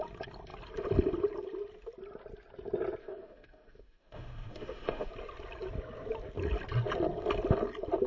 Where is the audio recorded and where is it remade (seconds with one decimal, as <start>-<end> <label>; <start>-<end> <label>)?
0.0-3.0 recorded; 3.0-5.1 remade; 5.1-8.1 recorded